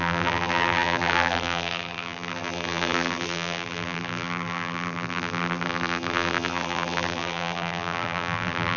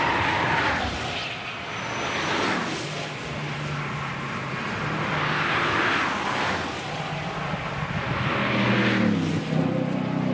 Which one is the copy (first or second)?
first